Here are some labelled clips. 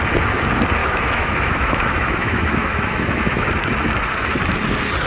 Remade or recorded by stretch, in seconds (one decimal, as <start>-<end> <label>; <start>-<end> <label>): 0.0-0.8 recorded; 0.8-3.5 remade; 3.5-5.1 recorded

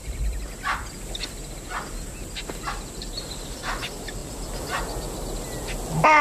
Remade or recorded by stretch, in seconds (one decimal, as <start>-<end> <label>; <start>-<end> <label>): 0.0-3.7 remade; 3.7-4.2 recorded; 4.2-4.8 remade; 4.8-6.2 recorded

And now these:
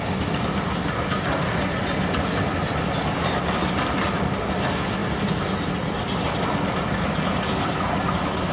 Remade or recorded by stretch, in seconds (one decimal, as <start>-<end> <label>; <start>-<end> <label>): 0.0-8.5 recorded

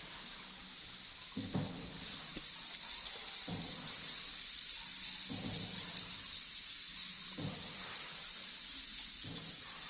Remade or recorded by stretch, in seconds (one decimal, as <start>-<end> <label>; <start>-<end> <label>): 0.0-9.9 recorded

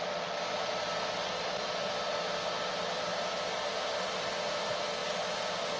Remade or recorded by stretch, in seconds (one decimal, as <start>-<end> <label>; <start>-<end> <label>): 0.0-5.8 recorded

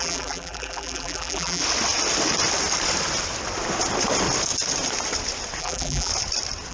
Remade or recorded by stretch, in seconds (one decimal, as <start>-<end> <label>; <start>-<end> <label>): 0.0-1.6 remade; 1.6-5.6 recorded; 5.6-6.1 remade; 6.1-6.7 recorded

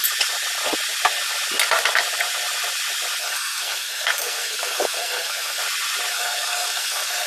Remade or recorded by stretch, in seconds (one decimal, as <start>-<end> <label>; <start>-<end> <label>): 0.0-3.2 recorded; 3.2-5.6 remade; 5.6-6.1 recorded; 6.1-7.3 remade